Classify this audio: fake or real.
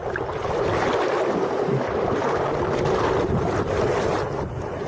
real